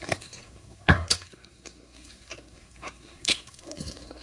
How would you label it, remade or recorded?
remade